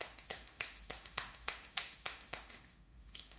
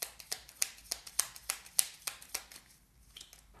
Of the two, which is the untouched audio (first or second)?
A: second